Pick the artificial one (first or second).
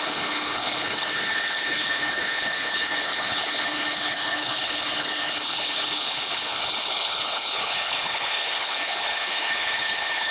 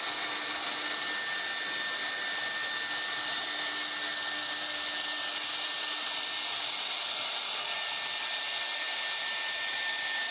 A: first